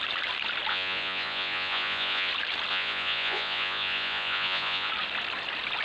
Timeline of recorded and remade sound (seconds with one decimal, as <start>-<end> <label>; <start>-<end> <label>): 0.0-0.7 recorded; 0.7-2.3 remade; 2.3-2.7 recorded; 2.7-4.9 remade; 4.9-5.8 recorded